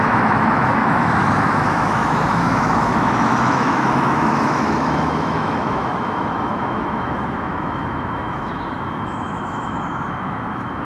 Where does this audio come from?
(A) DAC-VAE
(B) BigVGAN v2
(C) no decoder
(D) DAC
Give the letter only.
A